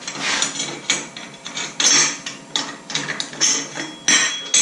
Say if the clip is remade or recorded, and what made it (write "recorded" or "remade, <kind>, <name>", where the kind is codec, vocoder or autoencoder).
recorded